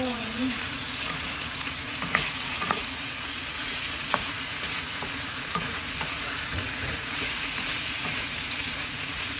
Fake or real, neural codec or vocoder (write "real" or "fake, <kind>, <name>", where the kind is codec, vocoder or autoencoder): fake, vocoder, Vocos